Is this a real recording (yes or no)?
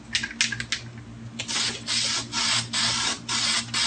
yes